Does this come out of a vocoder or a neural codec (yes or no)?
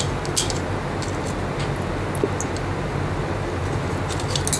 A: no